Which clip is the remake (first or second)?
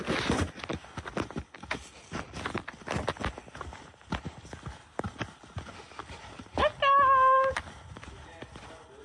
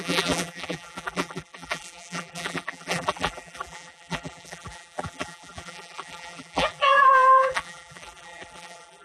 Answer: second